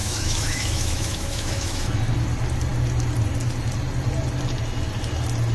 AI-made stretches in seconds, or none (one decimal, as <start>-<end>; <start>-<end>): 0.0-2.0

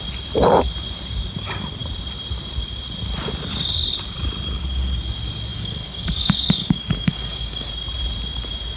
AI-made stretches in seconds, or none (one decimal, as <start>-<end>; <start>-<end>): 5.5-7.7

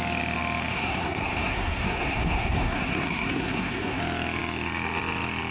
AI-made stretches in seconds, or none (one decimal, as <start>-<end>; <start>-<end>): 0.7-4.0

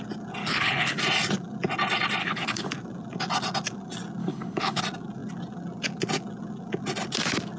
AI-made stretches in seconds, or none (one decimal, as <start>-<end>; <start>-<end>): 0.4-1.0; 2.2-2.7; 4.2-4.8

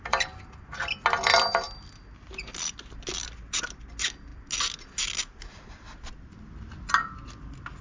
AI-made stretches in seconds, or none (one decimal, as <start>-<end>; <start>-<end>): none